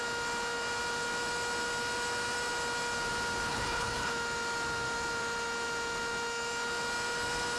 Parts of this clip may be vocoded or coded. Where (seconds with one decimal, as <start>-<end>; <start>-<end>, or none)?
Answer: 3.5-4.1